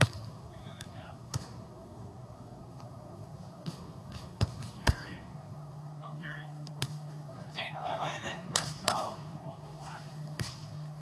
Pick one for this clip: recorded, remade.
remade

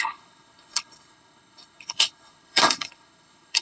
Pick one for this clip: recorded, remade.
remade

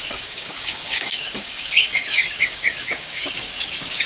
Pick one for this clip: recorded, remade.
remade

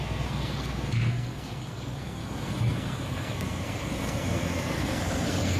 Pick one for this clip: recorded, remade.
remade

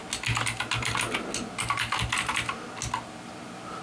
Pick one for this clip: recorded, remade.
recorded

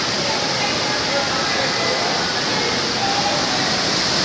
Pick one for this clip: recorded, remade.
recorded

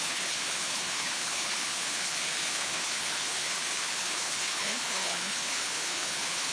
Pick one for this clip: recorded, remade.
remade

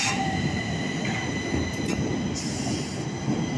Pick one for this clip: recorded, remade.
recorded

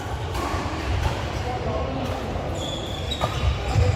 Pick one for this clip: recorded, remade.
remade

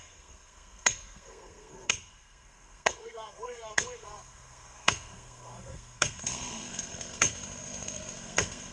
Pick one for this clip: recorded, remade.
remade